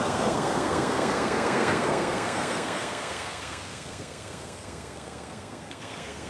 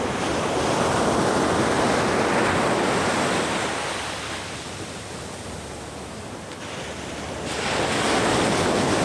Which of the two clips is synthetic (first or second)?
first